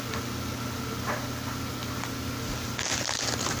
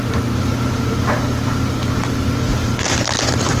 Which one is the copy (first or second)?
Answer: second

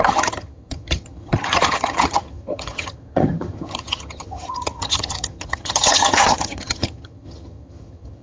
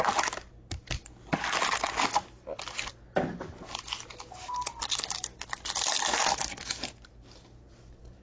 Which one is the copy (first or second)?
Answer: first